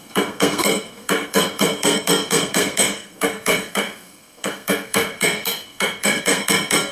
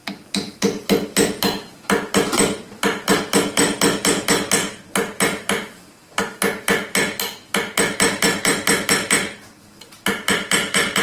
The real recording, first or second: second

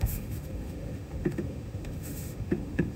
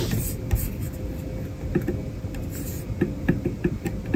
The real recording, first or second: second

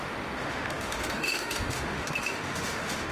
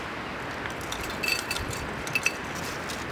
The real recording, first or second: second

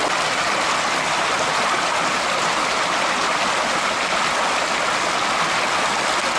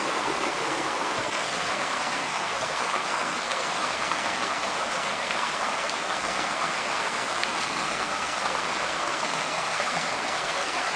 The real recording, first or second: first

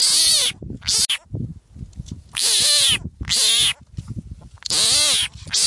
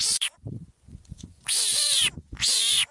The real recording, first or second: first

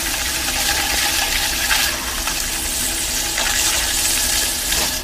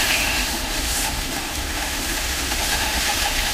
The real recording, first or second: first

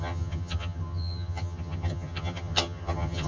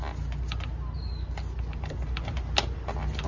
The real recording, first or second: second